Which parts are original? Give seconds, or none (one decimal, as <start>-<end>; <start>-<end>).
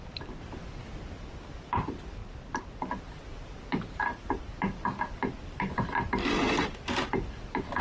0.0-2.2; 4.4-7.8